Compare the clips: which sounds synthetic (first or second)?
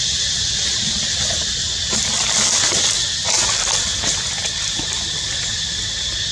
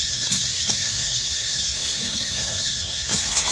second